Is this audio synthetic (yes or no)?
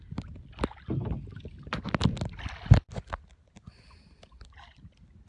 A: no